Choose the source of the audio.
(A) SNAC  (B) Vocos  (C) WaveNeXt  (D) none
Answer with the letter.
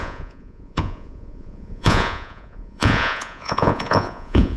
B